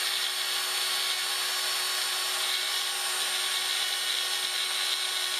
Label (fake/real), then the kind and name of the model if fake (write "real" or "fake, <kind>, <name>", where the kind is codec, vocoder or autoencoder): real